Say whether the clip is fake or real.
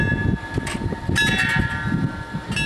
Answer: real